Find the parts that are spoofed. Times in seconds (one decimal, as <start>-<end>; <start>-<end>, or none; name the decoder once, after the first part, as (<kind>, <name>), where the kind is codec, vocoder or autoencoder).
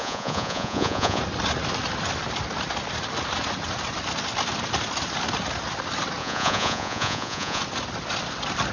0.0-1.2 (vocoder, Vocos); 6.2-7.6